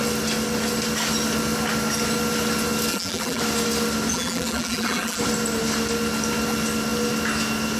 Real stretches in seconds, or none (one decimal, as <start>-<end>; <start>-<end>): 0.0-2.9; 3.4-4.1; 5.2-7.8